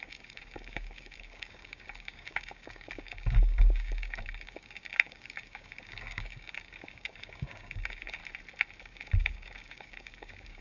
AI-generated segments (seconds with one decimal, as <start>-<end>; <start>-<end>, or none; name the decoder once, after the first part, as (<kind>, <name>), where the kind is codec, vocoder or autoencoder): 0.0-8.2 (codec, DAC); 8.8-10.6